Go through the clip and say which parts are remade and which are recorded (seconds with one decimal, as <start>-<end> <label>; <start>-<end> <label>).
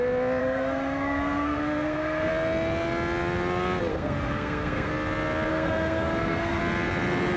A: 0.0-0.4 recorded; 0.4-2.3 remade; 2.3-3.9 recorded; 3.9-4.9 remade; 4.9-5.5 recorded; 5.5-6.6 remade; 6.6-7.4 recorded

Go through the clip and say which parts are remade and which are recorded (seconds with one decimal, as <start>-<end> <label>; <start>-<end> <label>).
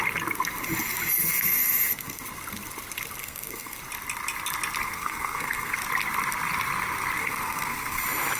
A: 0.0-1.2 recorded; 1.2-2.2 remade; 2.2-3.2 recorded; 3.2-3.8 remade; 3.8-4.8 recorded; 4.8-5.8 remade; 5.8-7.2 recorded; 7.2-8.0 remade; 8.0-8.4 recorded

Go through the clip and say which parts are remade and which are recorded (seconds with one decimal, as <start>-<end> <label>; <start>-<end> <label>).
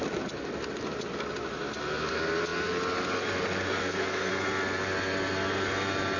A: 0.0-3.8 recorded; 3.8-4.3 remade; 4.3-6.2 recorded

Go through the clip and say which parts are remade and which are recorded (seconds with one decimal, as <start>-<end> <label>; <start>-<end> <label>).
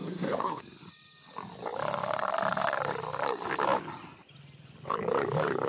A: 0.0-0.6 remade; 0.6-5.7 recorded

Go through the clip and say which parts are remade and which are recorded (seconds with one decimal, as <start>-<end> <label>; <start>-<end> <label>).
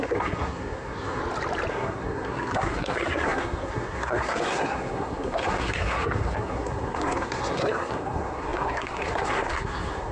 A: 0.0-1.2 remade; 1.2-1.7 recorded; 1.7-10.1 remade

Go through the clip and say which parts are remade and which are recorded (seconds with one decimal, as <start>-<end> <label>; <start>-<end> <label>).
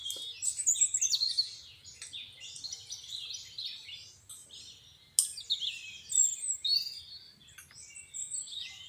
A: 0.0-8.9 recorded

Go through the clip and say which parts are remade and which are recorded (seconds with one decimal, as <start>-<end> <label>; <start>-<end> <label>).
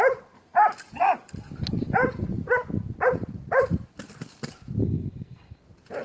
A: 0.0-4.8 recorded; 4.8-5.6 remade; 5.6-6.0 recorded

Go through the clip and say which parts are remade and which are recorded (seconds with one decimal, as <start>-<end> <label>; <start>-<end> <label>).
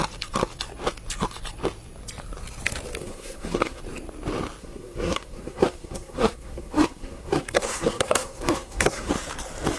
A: 0.0-3.0 recorded; 3.0-3.8 remade; 3.8-4.6 recorded; 4.6-9.1 remade; 9.1-9.8 recorded